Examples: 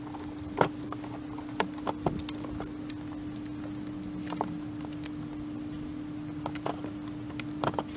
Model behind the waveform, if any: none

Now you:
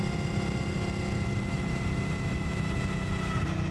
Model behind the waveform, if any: none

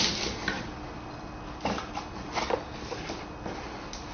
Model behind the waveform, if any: none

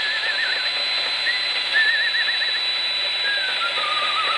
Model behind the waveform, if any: none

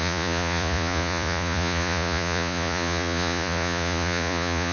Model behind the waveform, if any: vocoder, Vocos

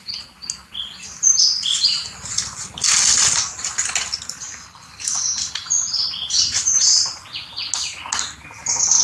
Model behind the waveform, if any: none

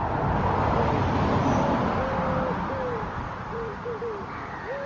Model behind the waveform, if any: none